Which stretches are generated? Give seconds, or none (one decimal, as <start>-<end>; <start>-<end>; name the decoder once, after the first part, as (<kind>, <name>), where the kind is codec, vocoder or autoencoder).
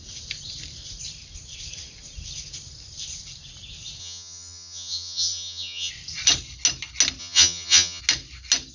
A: 4.0-5.9 (vocoder, HiFi-GAN); 7.2-8.0